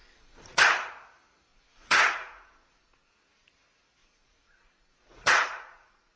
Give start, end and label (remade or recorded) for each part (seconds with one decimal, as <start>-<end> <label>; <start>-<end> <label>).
0.0-0.6 remade; 0.6-1.5 recorded; 1.5-3.1 remade; 3.1-4.0 recorded; 4.0-6.2 remade